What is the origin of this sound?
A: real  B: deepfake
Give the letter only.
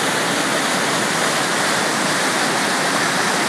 A